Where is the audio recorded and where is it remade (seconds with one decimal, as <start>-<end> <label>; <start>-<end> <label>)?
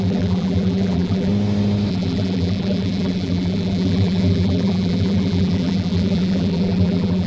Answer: 0.0-1.3 remade; 1.3-1.9 recorded; 1.9-7.3 remade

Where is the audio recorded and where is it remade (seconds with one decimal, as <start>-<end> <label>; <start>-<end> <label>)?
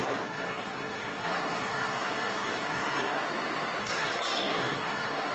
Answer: 0.0-3.2 remade; 3.2-3.8 recorded; 3.8-5.3 remade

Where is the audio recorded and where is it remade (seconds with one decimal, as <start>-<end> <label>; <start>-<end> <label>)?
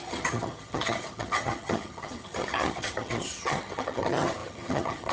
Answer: 0.0-5.1 remade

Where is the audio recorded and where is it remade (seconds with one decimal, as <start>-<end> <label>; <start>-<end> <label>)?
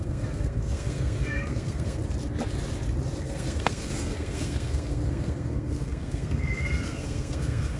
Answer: 0.0-2.0 remade; 2.0-3.2 recorded; 3.2-7.8 remade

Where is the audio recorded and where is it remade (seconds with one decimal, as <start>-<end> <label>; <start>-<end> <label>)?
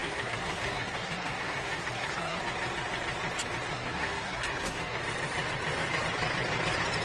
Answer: 0.0-2.4 remade; 2.4-3.7 recorded; 3.7-5.0 remade; 5.0-7.0 recorded